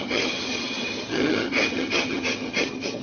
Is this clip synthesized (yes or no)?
yes